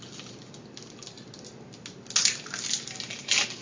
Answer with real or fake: real